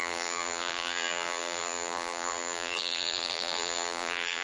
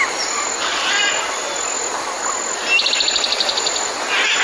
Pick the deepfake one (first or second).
first